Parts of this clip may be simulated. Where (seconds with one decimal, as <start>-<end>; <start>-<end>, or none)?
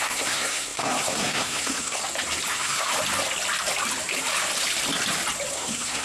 0.0-2.0; 2.5-2.9; 5.5-6.0